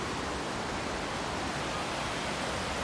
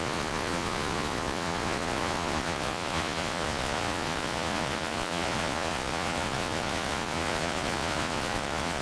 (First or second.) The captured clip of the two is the first